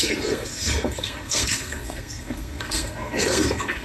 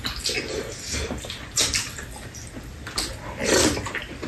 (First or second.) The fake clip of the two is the first